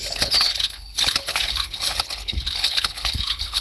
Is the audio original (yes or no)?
no